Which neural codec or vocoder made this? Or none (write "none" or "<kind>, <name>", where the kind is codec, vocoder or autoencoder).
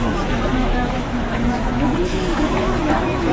autoencoder, DAC-VAE